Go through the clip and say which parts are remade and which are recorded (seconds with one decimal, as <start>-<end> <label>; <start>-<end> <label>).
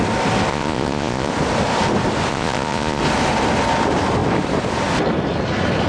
0.0-0.5 recorded; 0.5-1.3 remade; 1.3-2.3 recorded; 2.3-3.0 remade; 3.0-5.9 recorded